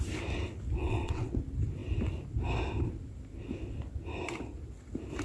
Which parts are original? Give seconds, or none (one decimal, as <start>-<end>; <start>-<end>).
0.0-0.8; 1.3-5.2